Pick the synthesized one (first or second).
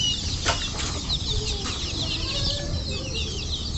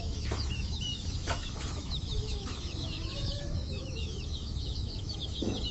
second